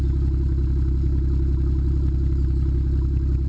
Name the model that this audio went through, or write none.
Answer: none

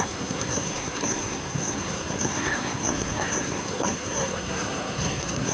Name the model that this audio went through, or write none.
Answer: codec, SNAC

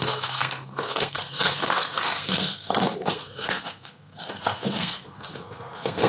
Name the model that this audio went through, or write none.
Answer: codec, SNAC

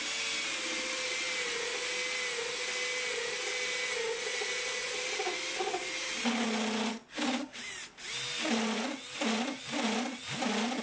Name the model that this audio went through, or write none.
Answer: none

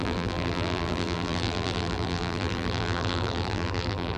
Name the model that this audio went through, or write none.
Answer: vocoder, BigVGAN v2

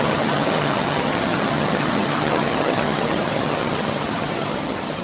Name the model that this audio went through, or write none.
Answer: vocoder, HiFi-GAN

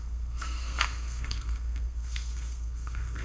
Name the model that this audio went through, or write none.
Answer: codec, SNAC